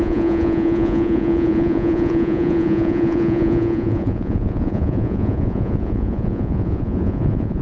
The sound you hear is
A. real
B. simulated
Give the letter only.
B